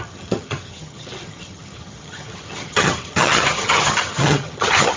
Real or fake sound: fake